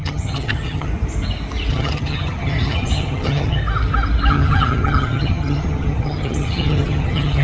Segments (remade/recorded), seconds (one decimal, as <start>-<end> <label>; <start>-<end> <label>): 0.0-0.9 remade; 0.9-1.7 recorded; 1.7-3.6 remade; 3.6-4.3 recorded; 4.3-7.4 remade